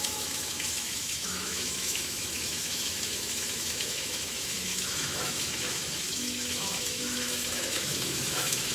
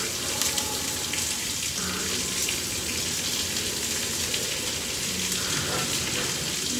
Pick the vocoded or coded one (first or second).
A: first